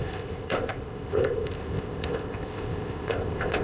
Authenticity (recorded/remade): remade